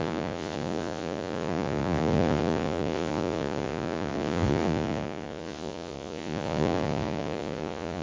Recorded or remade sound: remade